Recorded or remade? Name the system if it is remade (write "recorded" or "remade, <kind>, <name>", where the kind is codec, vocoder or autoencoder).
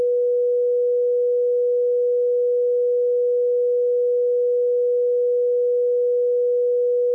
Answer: recorded